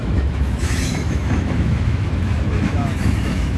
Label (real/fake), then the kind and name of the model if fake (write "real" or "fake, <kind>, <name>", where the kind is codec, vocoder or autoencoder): fake, autoencoder, DAC-VAE